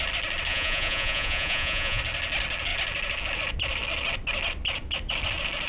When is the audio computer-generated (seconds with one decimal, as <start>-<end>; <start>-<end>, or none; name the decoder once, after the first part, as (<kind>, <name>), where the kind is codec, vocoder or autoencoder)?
0.5-2.0 (vocoder, Vocos)